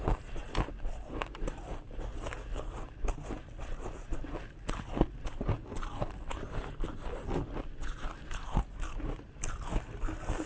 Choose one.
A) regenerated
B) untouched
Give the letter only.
B